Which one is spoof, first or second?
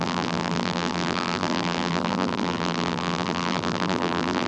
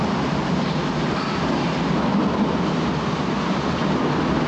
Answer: first